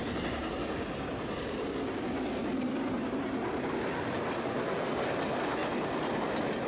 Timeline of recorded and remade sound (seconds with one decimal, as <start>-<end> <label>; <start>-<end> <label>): 0.0-6.7 recorded